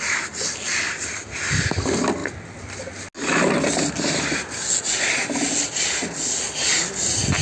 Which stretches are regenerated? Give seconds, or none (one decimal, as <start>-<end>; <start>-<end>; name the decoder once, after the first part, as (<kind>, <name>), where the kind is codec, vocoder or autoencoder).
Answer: none